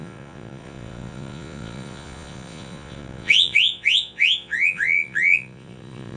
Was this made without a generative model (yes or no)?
no